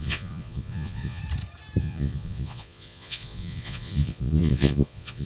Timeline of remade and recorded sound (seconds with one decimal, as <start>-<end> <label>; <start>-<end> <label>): 0.0-1.2 remade; 1.2-1.8 recorded; 1.8-5.3 remade